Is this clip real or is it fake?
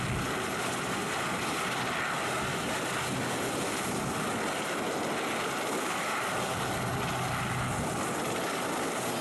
real